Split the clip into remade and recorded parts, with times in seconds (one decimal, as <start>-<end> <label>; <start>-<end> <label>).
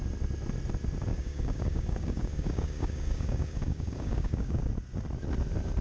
0.0-1.1 recorded; 1.1-4.6 remade; 4.6-5.8 recorded